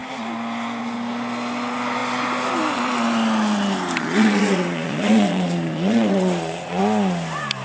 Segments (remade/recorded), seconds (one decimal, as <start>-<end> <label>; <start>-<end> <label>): 0.0-4.0 recorded; 4.0-6.8 remade; 6.8-7.6 recorded